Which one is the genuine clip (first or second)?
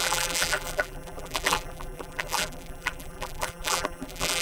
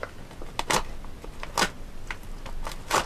second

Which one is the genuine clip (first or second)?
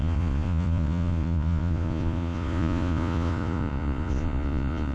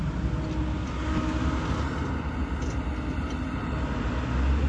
second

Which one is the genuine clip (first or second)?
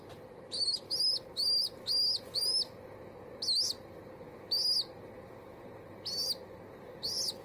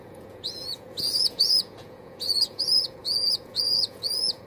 first